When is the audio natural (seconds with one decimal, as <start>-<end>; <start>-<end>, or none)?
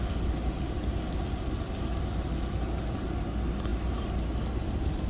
0.0-5.1